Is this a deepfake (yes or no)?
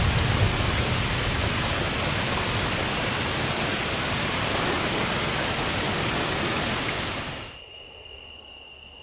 no